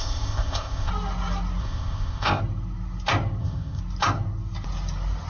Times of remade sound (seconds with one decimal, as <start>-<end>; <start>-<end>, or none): 0.0-0.9; 1.6-2.4; 3.4-3.8